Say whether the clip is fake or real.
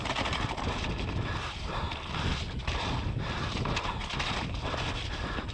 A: real